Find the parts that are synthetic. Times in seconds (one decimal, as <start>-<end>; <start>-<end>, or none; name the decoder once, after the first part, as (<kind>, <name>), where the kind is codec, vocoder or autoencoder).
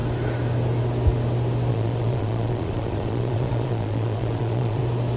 1.7-4.8 (vocoder, Vocos)